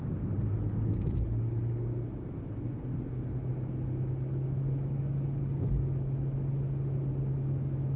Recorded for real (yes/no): yes